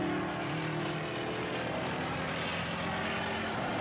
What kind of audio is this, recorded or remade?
recorded